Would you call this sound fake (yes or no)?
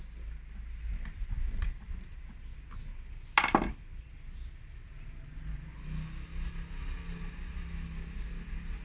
no